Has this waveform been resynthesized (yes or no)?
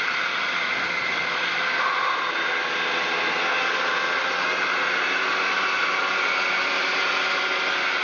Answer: no